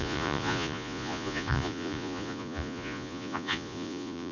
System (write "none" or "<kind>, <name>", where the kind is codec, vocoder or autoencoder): vocoder, Vocos